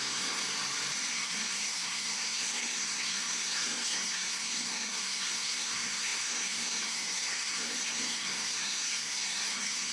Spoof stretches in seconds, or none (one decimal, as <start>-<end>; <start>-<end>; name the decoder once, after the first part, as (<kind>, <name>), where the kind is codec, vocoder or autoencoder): 0.0-0.4 (codec, SNAC); 1.1-9.9